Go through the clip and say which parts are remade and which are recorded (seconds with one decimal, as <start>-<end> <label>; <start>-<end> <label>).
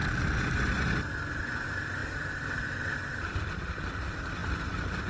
0.0-4.4 recorded; 4.4-5.1 remade